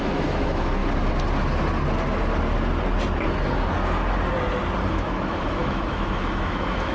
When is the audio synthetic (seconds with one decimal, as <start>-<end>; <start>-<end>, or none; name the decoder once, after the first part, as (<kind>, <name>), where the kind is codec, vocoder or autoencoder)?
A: 0.0-0.8 (autoencoder, DAC-VAE); 4.9-6.9